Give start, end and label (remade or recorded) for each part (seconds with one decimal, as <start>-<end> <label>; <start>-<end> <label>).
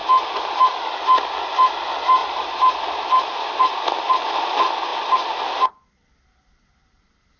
0.0-0.6 remade; 0.6-2.2 recorded; 2.2-3.6 remade; 3.6-7.4 recorded